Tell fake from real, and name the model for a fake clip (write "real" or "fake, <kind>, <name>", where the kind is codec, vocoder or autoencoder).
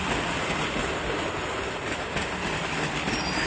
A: real